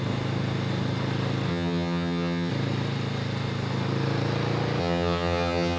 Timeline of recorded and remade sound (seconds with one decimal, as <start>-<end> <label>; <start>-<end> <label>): 0.0-1.5 recorded; 1.5-2.5 remade; 2.5-4.8 recorded; 4.8-5.8 remade